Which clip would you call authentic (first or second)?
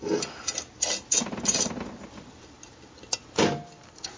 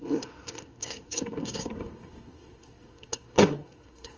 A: first